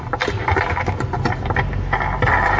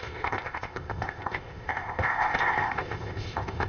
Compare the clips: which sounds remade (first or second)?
second